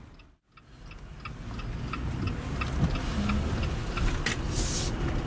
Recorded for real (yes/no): yes